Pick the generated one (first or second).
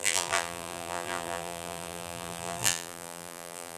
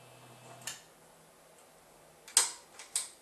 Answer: first